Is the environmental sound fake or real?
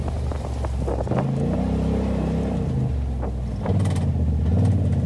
real